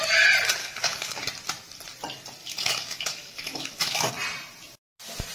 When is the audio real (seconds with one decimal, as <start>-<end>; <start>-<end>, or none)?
0.0-0.6; 1.2-2.4; 4.1-5.3